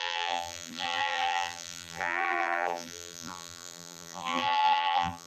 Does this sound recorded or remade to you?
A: remade